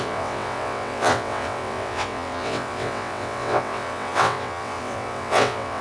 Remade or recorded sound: remade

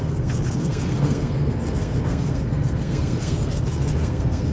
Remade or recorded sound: remade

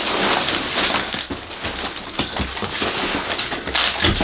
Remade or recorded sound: recorded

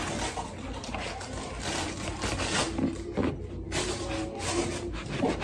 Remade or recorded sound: recorded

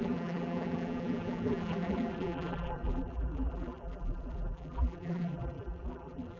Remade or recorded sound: remade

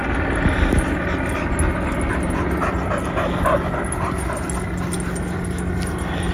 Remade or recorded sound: recorded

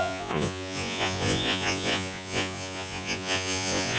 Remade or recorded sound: remade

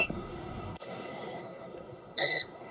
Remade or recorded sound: remade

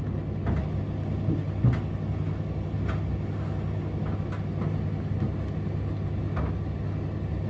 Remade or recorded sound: recorded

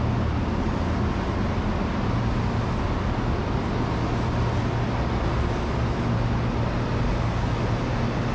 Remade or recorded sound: recorded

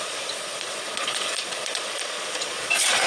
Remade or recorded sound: remade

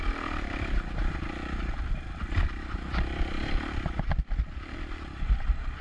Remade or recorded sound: remade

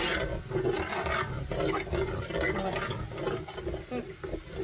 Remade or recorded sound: recorded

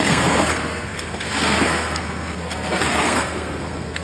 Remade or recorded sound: remade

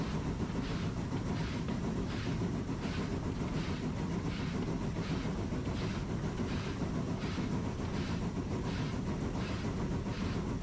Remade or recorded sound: recorded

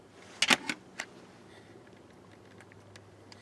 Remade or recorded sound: recorded